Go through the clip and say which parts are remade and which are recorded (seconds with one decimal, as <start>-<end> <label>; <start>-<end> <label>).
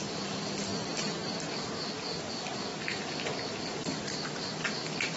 0.0-0.7 remade; 0.7-2.3 recorded; 2.3-2.7 remade; 2.7-3.5 recorded; 3.5-5.2 remade